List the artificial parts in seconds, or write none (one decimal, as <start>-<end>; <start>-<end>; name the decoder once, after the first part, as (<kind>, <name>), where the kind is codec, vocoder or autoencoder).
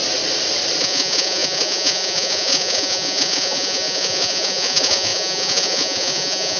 0.8-6.6 (vocoder, Vocos)